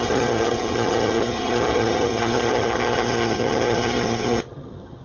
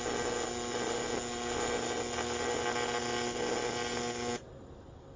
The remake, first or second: first